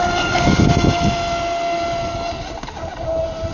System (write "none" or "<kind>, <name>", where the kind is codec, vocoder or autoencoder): none